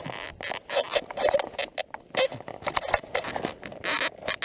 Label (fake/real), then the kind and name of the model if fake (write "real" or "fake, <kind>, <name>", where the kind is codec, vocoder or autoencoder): real